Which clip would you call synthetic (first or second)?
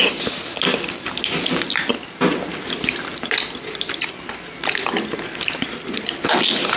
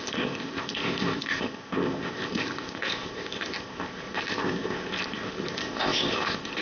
second